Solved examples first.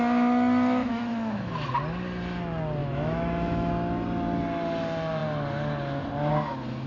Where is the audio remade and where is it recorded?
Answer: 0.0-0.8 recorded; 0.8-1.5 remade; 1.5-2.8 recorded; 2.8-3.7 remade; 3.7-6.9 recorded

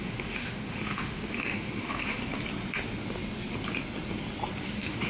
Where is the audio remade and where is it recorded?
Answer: 0.0-2.2 remade; 2.2-4.6 recorded; 4.6-5.1 remade

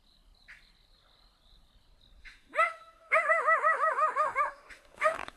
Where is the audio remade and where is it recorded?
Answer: 0.0-2.2 recorded; 2.2-5.4 remade

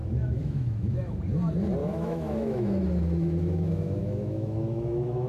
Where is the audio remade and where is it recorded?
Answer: 0.0-1.2 remade; 1.2-1.8 recorded; 1.8-5.3 remade

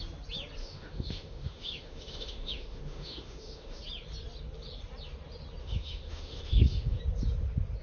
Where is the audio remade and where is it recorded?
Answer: 0.0-0.6 recorded; 0.6-3.8 remade; 3.8-5.6 recorded; 5.6-7.0 remade; 7.0-7.8 recorded